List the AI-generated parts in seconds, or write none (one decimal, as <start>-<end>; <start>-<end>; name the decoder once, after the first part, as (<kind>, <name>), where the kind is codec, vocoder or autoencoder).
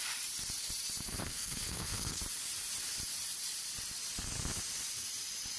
1.2-2.2 (codec, SNAC)